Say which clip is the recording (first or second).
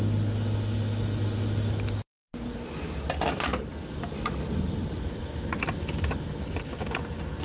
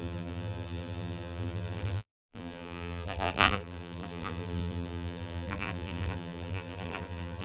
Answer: first